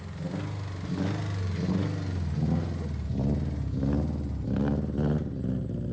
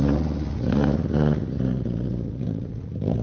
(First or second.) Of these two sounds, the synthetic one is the second